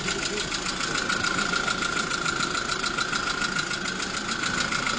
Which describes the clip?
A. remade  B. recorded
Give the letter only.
B